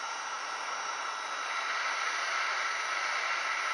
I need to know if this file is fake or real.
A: real